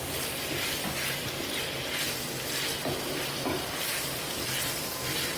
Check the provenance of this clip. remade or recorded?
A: recorded